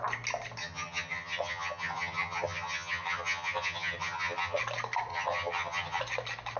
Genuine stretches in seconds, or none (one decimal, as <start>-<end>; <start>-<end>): 0.0-0.6; 4.6-5.1; 6.0-6.6